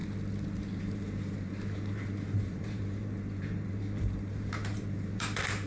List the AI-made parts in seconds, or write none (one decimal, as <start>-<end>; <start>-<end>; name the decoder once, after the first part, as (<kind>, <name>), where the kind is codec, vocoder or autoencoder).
0.8-5.7 (vocoder, BigVGAN v2)